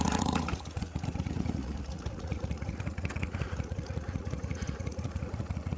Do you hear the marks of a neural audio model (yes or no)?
yes